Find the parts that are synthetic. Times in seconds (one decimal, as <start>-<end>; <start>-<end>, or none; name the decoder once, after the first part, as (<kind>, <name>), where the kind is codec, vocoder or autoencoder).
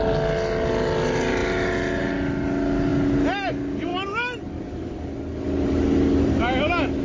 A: none